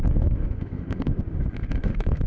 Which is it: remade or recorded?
remade